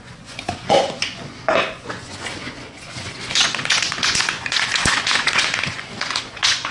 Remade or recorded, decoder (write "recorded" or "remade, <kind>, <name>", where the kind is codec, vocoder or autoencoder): remade, vocoder, Vocos